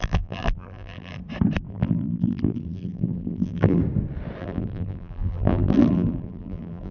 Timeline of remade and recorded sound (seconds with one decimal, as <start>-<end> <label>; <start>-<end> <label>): 0.0-1.2 remade; 1.2-1.7 recorded; 1.7-3.8 remade; 3.8-4.4 recorded; 4.4-6.9 remade